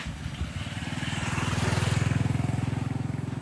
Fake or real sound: real